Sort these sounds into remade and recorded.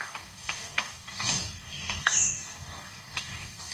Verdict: remade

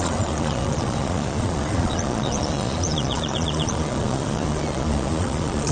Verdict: remade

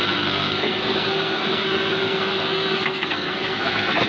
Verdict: remade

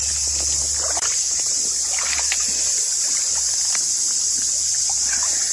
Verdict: recorded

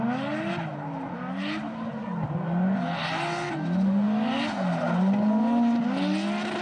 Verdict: recorded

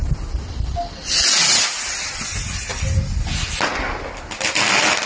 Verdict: recorded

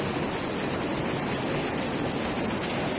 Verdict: recorded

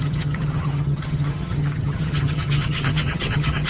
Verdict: remade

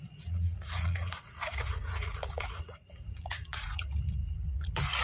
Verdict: remade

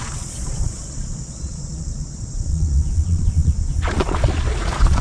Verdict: remade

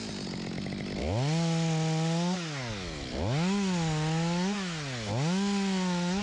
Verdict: recorded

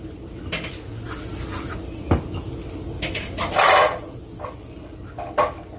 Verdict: recorded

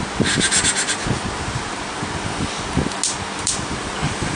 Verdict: recorded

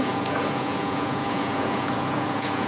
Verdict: remade